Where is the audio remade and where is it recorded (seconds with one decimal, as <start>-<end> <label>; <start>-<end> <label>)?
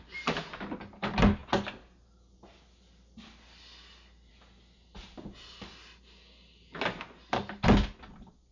0.0-8.5 recorded